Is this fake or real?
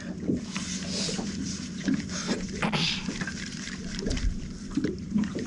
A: real